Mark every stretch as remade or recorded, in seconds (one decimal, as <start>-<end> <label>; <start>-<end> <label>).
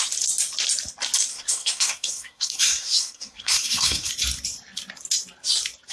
0.0-1.3 recorded; 1.3-4.1 remade; 4.1-5.9 recorded